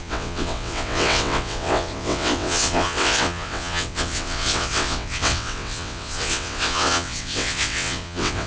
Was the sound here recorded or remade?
remade